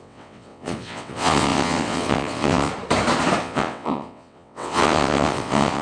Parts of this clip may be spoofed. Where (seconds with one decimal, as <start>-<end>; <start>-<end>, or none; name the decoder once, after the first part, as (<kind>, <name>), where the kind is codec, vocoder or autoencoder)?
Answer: 0.0-2.7 (vocoder, WaveNeXt); 3.4-5.8